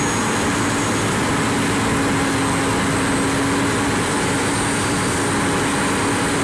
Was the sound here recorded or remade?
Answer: recorded